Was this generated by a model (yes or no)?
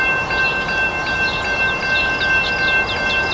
no